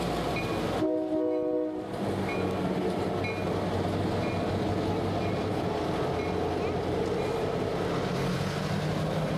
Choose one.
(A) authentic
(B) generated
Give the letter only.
A